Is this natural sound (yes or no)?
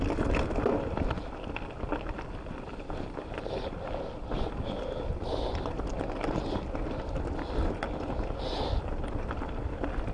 yes